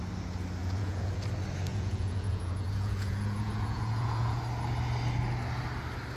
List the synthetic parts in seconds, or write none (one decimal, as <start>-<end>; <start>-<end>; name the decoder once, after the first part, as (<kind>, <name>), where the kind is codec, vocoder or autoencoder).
0.6-1.2 (vocoder, Vocos); 1.7-4.4